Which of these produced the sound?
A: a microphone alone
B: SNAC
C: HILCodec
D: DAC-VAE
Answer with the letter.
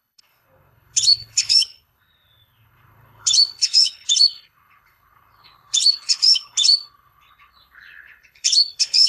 C